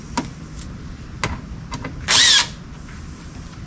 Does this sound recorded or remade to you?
recorded